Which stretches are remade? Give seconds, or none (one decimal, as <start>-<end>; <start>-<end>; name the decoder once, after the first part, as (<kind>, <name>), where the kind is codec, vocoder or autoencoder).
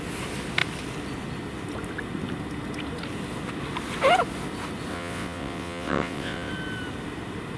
4.9-6.5 (vocoder, WaveNeXt)